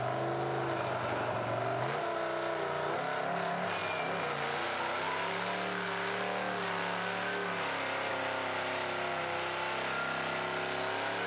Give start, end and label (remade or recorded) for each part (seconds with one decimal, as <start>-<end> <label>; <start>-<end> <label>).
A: 0.0-11.3 recorded